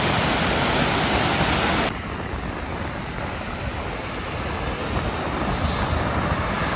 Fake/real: real